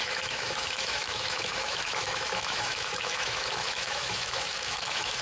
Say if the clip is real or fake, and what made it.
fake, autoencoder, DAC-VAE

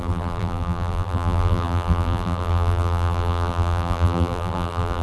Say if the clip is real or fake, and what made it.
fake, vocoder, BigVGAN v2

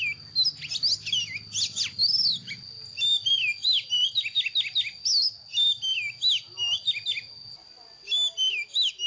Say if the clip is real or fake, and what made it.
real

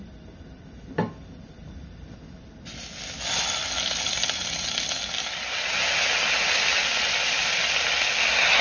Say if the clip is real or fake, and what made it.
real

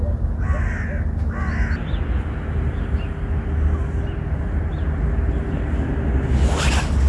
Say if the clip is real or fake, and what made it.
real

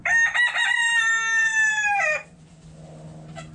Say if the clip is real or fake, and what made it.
real